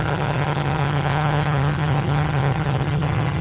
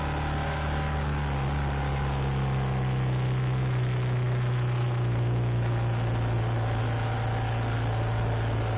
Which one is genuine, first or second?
second